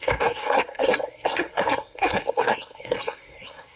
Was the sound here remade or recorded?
remade